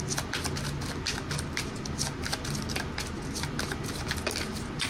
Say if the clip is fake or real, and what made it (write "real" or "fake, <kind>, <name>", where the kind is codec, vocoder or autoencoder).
real